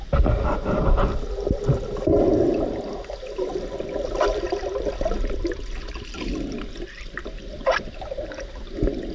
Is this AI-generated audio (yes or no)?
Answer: no